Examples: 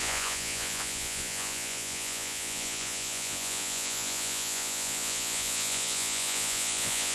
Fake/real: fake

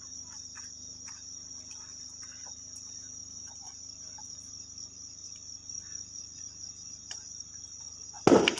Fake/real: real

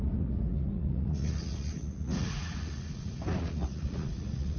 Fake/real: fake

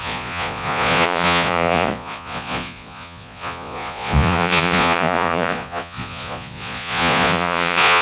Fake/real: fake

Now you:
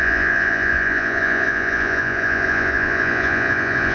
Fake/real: fake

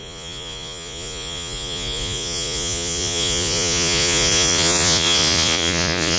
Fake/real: fake